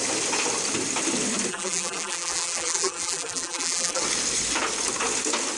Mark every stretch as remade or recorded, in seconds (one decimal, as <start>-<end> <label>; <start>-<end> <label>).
0.0-1.5 recorded; 1.5-4.0 remade; 4.0-5.6 recorded